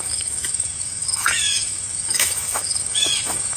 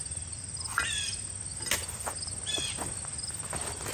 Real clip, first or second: second